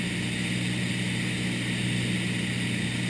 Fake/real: real